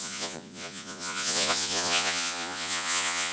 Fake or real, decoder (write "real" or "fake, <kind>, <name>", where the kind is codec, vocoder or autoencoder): fake, vocoder, Vocos